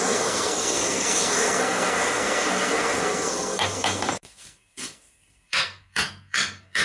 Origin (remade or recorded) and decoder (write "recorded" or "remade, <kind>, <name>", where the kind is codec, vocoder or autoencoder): remade, codec, SNAC